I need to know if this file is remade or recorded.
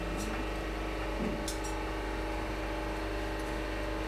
recorded